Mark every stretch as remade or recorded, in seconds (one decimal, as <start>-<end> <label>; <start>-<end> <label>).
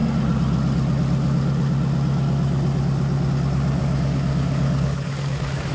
0.0-3.8 recorded; 3.8-5.7 remade